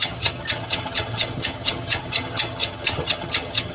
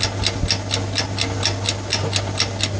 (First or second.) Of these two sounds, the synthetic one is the first